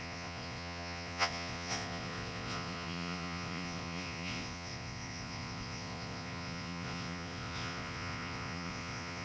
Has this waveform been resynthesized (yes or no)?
yes